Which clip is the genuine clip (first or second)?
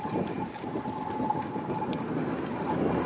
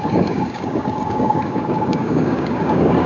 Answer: first